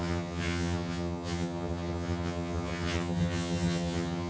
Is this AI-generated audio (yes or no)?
yes